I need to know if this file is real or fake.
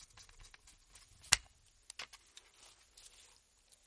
real